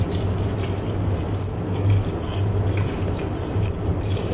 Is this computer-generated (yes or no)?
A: no